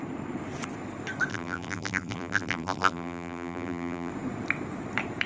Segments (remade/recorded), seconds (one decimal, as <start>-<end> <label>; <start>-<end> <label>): 0.0-1.3 recorded; 1.3-4.1 remade; 4.1-5.3 recorded